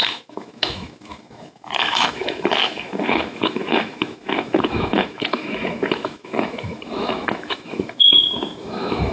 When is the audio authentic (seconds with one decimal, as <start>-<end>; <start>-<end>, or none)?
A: none